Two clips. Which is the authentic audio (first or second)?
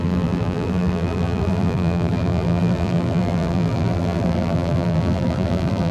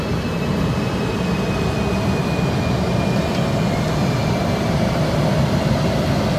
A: second